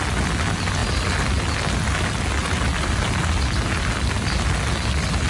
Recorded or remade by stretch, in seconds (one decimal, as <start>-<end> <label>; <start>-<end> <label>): 0.0-5.3 recorded